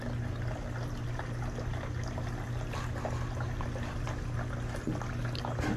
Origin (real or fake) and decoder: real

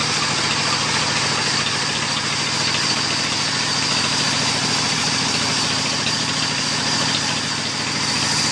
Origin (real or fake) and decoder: real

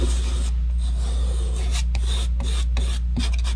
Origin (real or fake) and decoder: real